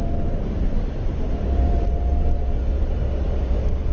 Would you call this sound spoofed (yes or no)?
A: yes